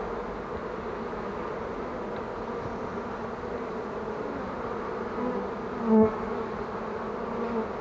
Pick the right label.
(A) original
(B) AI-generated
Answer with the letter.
A